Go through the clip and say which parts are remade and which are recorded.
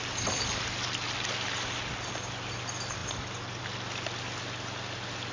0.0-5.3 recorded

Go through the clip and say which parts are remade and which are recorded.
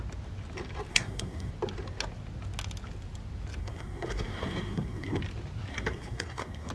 0.0-0.9 recorded; 0.9-1.5 remade; 1.5-3.6 recorded; 3.6-5.2 remade; 5.2-5.7 recorded; 5.7-6.7 remade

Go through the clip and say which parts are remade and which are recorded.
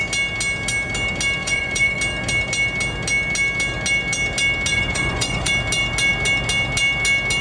0.0-1.4 recorded; 1.4-2.0 remade; 2.0-4.7 recorded; 4.7-5.5 remade; 5.5-7.4 recorded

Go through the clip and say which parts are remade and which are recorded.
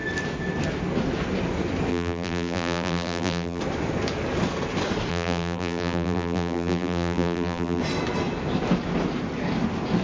0.0-1.9 recorded; 1.9-3.6 remade; 3.6-5.1 recorded; 5.1-7.8 remade; 7.8-10.0 recorded